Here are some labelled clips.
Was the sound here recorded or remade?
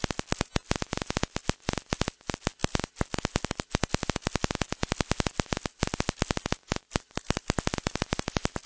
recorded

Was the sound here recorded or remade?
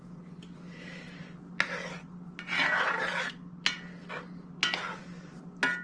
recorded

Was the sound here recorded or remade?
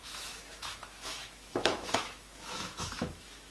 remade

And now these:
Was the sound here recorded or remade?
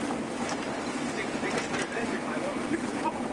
recorded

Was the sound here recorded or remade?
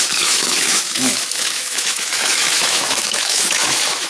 remade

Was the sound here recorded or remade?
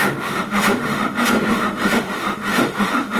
remade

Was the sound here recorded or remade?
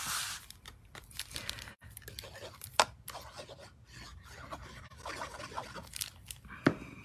recorded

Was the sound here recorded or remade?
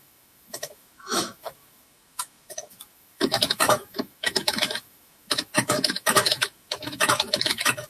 remade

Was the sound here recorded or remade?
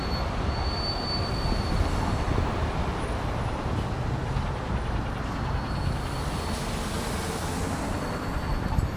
recorded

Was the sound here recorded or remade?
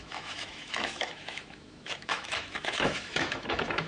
remade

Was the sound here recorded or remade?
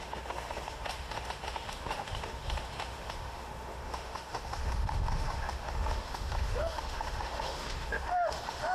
remade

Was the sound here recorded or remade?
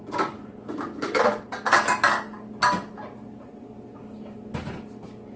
recorded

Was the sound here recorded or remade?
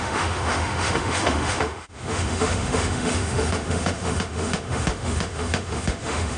remade